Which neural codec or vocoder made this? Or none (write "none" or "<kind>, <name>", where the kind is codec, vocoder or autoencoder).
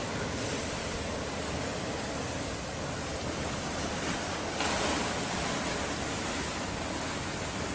none